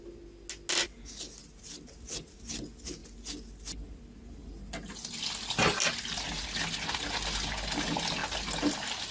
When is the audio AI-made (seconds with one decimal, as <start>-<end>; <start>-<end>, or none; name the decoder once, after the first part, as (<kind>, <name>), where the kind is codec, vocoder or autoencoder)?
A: none